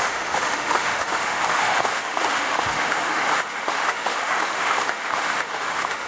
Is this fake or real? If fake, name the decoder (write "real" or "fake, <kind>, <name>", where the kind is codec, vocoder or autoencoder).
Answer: fake, autoencoder, DAC-VAE